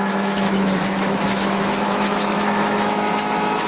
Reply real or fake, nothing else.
fake